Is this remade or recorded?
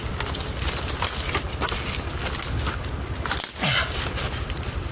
recorded